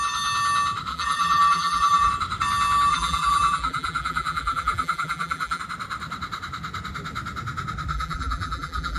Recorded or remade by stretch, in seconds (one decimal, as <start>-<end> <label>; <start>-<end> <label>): 0.0-0.9 recorded; 0.9-2.1 remade; 2.1-2.9 recorded; 2.9-5.6 remade; 5.6-7.9 recorded; 7.9-9.0 remade